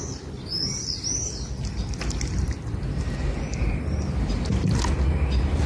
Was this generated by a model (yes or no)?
no